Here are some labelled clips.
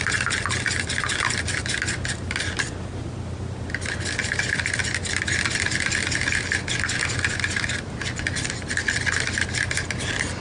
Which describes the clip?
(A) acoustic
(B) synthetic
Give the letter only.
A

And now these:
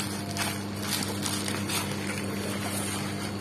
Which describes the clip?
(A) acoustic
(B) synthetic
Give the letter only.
A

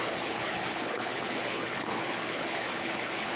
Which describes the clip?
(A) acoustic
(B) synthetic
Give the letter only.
B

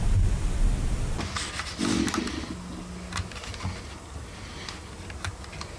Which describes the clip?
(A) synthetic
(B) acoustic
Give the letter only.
B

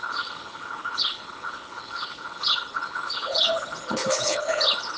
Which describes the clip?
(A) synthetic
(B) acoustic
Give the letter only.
A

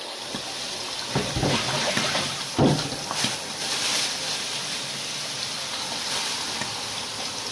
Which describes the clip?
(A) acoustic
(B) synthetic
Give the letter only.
A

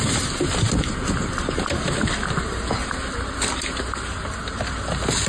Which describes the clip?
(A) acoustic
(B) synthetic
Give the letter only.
A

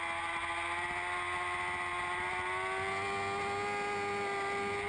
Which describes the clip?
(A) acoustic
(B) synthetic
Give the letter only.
A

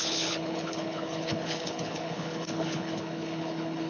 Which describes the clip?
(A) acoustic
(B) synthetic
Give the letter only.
B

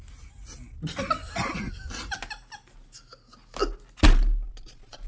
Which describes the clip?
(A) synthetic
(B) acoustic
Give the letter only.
B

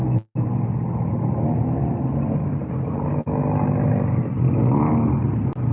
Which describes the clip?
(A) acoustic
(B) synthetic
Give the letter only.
A